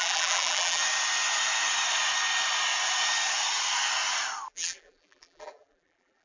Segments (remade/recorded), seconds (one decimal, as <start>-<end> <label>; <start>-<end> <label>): 0.0-0.8 remade; 0.8-4.5 recorded; 4.5-6.2 remade